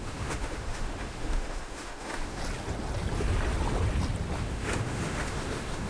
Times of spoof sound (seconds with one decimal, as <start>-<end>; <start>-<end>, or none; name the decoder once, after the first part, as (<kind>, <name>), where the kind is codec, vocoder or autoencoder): 0.0-2.4 (autoencoder, DAC-VAE); 4.4-5.9